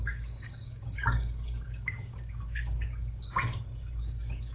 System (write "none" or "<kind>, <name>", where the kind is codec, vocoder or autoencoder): codec, DAC